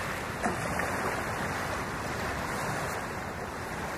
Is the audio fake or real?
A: real